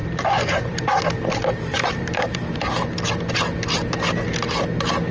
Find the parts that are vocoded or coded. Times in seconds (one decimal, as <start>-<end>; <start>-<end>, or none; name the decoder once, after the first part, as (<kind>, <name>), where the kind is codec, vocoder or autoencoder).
0.0-1.0 (vocoder, BigVGAN v2); 1.7-3.0